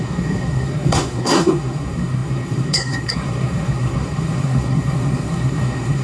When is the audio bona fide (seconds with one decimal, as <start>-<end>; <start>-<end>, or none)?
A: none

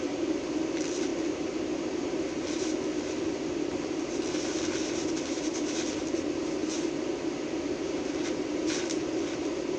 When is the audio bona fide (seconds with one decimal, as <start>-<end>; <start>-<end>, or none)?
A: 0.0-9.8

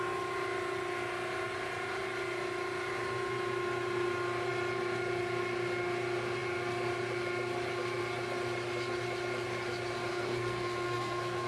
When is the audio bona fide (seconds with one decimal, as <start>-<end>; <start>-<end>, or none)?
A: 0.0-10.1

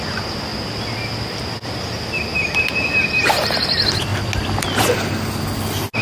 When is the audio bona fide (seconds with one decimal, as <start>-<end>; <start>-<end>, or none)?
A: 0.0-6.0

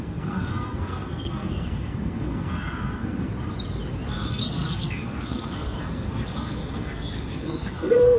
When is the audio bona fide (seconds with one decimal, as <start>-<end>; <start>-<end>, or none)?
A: 3.3-4.3

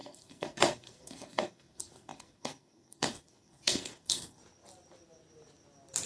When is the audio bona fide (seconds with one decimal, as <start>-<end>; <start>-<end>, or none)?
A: 4.4-6.1